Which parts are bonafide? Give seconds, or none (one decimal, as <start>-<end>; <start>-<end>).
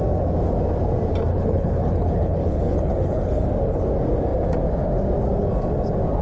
0.0-1.3; 3.5-6.2